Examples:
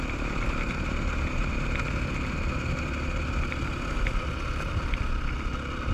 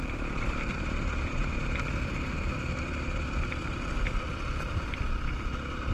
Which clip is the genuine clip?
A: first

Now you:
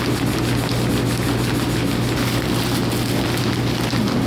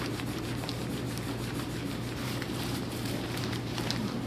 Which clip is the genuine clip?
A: first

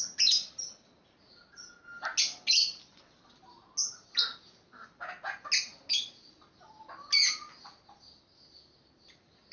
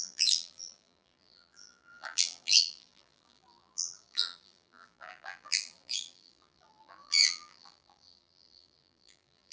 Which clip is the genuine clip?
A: first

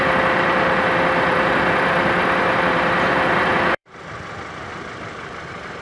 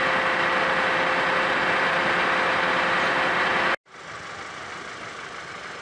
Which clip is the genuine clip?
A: second